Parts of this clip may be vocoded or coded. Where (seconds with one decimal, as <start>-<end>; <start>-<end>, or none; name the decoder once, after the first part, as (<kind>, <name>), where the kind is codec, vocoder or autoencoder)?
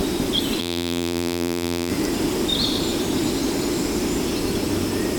0.6-1.9 (vocoder, BigVGAN v2)